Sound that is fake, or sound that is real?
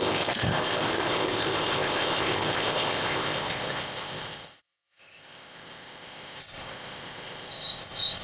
fake